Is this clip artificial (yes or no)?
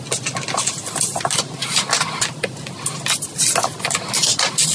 no